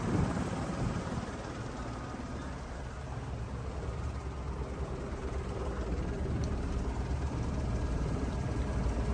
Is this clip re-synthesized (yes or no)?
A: no